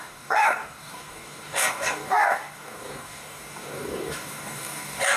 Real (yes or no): no